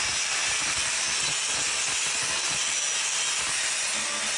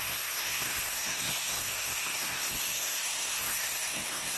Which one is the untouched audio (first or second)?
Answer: first